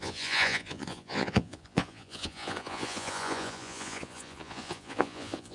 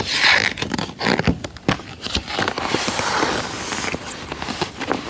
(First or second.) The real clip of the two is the second